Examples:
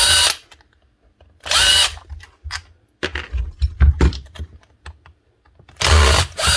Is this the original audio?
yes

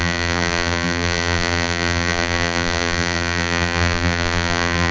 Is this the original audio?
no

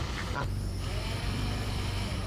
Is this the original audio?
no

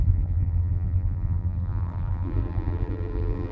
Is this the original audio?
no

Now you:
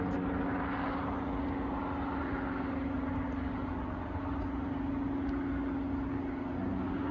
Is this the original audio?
yes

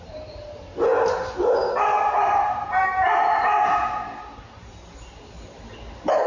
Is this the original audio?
yes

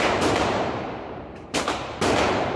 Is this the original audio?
no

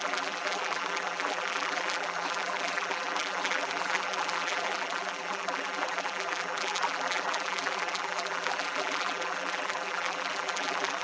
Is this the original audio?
no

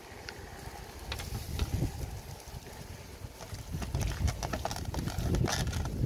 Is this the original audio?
yes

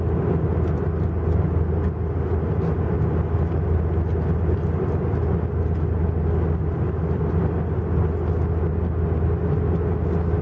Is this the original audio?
yes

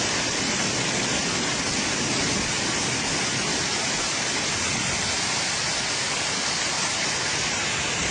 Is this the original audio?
no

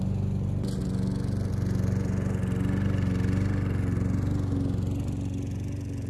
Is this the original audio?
yes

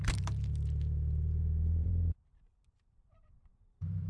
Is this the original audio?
no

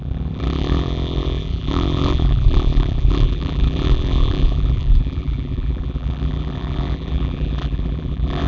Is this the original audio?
no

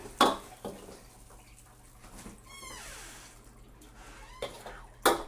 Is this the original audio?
yes